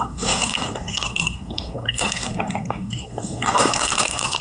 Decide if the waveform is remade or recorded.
remade